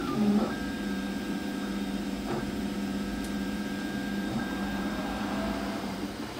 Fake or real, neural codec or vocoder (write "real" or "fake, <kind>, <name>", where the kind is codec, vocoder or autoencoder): fake, vocoder, BigVGAN v2